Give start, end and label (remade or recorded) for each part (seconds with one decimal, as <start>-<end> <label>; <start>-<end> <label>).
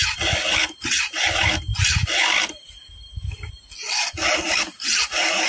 0.0-5.5 recorded